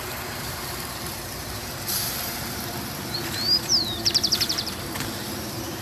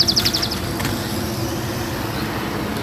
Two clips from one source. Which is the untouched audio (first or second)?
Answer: second